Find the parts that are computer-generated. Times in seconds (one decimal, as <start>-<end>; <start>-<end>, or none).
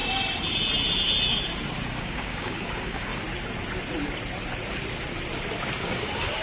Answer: 2.0-3.1; 5.8-6.4